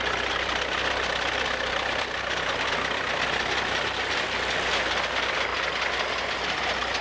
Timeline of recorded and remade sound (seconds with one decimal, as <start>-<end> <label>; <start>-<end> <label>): 0.0-7.0 recorded